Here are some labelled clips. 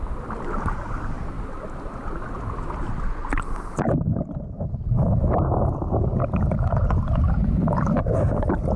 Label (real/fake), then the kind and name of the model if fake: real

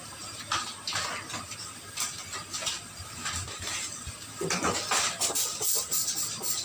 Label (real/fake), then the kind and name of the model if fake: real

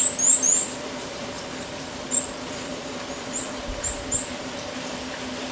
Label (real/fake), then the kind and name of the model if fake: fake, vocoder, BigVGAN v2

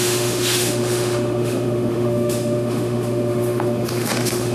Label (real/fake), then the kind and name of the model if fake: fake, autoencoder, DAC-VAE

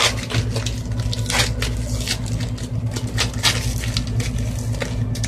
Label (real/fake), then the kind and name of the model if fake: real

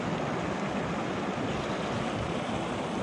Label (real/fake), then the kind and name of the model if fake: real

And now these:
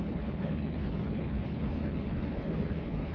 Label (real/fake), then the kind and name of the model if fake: fake, codec, HILCodec